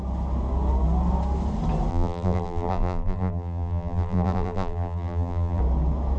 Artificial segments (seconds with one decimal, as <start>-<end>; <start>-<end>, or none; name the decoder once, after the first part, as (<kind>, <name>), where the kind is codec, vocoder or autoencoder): 1.9-5.6 (vocoder, BigVGAN v2)